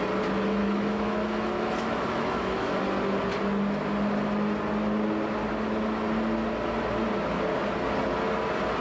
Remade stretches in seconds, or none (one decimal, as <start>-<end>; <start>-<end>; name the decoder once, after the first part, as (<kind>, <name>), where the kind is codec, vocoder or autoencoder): 0.6-2.8 (autoencoder, DAC-VAE)

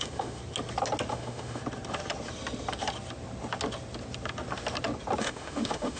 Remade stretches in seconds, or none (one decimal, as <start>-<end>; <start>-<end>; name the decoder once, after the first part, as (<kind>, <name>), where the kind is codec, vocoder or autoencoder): 0.0-0.4 (autoencoder, DAC-VAE); 1.1-1.6; 5.2-6.0

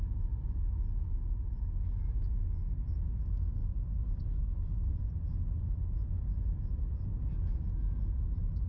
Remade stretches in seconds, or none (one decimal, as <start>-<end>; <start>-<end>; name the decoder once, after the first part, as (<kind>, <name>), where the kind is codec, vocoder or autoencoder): none

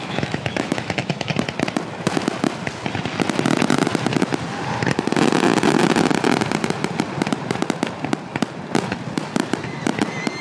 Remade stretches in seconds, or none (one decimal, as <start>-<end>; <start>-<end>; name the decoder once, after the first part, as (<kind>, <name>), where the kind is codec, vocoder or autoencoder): 0.0-1.3 (autoencoder, DAC-VAE)

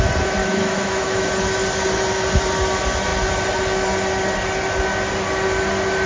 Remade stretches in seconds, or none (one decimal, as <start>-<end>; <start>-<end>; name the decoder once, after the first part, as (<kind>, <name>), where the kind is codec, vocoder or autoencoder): 0.4-1.3 (autoencoder, DAC-VAE)

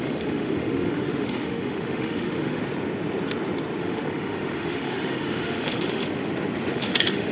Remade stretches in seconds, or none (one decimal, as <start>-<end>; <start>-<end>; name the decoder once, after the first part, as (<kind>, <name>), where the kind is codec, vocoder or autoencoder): 0.0-2.6 (autoencoder, DAC-VAE); 3.8-6.1; 6.7-7.3

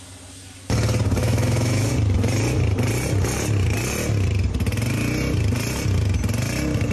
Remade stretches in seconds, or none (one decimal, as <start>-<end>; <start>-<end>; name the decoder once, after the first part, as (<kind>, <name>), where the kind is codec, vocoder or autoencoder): 1.2-1.9 (autoencoder, DAC-VAE)